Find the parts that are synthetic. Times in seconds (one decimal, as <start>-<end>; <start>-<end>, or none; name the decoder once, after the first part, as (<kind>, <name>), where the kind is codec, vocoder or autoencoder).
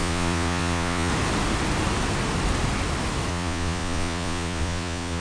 0.0-1.1 (vocoder, Vocos); 3.3-5.2